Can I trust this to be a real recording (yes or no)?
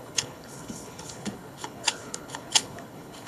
no